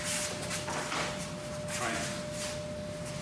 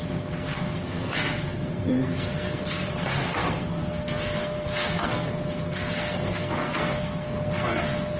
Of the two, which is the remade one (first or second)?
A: second